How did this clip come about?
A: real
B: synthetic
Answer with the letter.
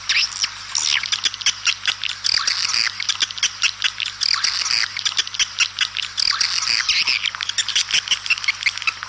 A